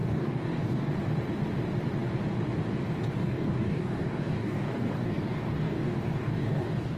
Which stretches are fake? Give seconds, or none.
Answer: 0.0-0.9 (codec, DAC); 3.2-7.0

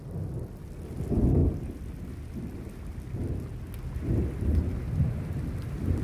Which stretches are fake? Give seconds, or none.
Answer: none

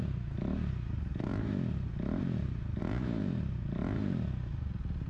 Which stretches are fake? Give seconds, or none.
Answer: none

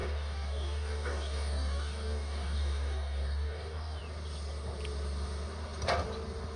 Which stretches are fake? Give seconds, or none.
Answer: 0.0-4.0 (codec, DAC)

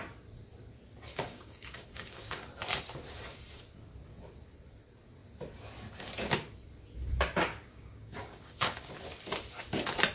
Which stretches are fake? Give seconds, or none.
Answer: 1.1-2.5 (codec, DAC); 7.5-8.9

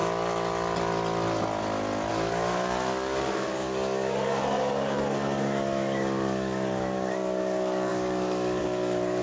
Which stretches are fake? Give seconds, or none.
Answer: 2.1-9.2 (codec, DAC)